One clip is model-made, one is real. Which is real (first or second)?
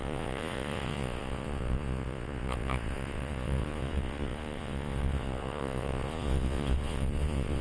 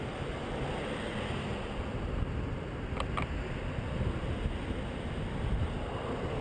second